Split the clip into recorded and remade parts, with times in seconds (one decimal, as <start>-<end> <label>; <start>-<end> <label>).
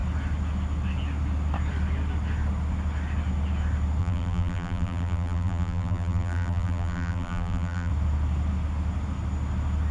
0.0-4.0 recorded; 4.0-7.9 remade; 7.9-9.9 recorded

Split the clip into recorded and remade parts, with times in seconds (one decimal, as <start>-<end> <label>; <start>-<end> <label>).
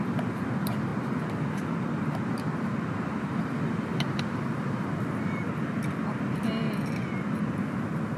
0.0-0.9 remade; 0.9-3.4 recorded; 3.4-6.6 remade; 6.6-8.2 recorded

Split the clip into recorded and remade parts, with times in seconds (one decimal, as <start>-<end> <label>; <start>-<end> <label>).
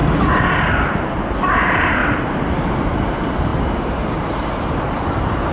0.0-0.7 recorded; 0.7-2.0 remade; 2.0-2.7 recorded; 2.7-5.5 remade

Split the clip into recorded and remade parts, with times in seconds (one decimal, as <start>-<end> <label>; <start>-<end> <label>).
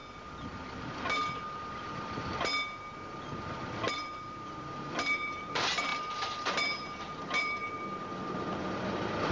0.0-1.4 recorded; 1.4-2.5 remade; 2.5-3.9 recorded; 3.9-9.3 remade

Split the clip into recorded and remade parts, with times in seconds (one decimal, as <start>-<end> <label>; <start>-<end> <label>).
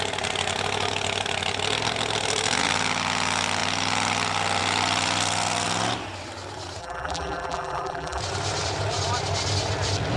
0.0-6.8 recorded; 6.8-8.2 remade; 8.2-10.2 recorded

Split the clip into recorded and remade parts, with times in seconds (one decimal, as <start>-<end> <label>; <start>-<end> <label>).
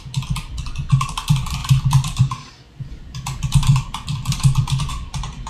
0.0-5.5 remade